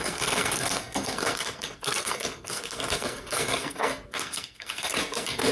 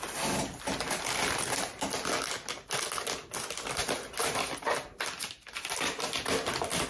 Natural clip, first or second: second